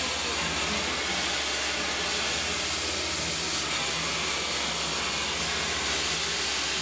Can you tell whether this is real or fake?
real